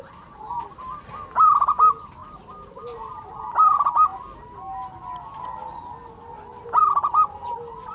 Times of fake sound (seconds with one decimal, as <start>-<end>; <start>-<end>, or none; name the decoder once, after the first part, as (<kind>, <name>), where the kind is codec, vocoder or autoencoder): 2.2-3.3 (vocoder, BigVGAN v2)